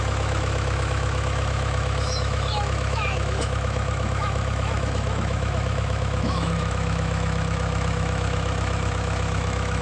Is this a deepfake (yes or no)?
yes